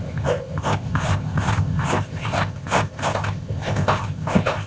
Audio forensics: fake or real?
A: fake